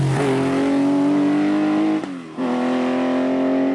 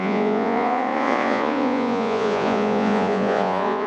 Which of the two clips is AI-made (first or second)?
second